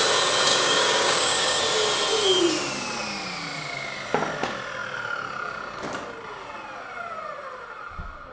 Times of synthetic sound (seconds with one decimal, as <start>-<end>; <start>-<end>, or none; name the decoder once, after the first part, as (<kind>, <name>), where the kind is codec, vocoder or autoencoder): 0.5-1.6 (codec, DAC)